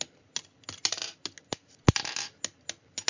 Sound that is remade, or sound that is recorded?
recorded